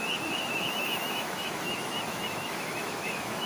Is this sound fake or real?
fake